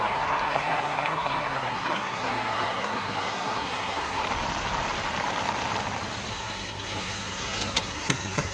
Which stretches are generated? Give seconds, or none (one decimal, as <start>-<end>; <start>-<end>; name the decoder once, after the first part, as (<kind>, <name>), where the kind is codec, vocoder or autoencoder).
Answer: 0.0-4.2 (codec, SNAC); 6.3-8.5